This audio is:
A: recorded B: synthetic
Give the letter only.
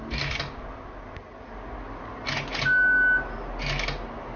A